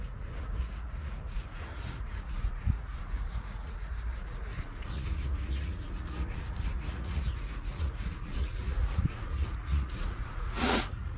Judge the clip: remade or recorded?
remade